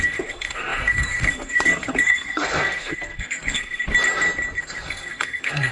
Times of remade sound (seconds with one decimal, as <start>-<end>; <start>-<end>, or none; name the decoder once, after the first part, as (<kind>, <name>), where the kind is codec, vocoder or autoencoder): 0.0-3.8 (codec, SNAC); 4.6-5.7